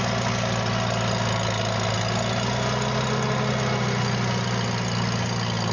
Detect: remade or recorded recorded